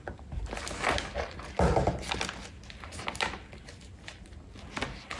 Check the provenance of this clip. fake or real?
real